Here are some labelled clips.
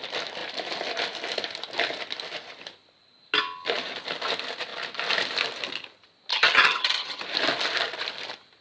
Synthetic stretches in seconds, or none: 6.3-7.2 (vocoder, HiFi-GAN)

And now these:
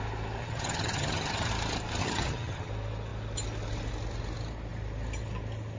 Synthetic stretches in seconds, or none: 0.4-1.5 (vocoder, HiFi-GAN); 2.0-2.7